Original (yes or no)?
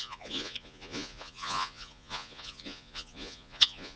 no